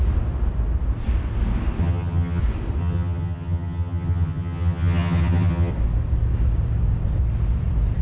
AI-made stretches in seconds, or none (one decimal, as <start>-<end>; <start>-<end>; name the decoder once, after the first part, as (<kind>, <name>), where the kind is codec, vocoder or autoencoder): 1.8-2.4 (vocoder, HiFi-GAN); 2.8-5.7